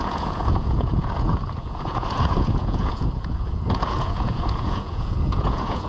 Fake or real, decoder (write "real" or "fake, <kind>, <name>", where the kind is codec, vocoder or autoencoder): fake, vocoder, Vocos